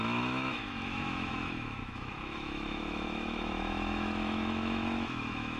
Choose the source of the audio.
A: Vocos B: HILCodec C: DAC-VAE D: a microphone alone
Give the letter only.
C